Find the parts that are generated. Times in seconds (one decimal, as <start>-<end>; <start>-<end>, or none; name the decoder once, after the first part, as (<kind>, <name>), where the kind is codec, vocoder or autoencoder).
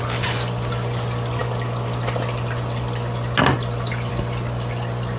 none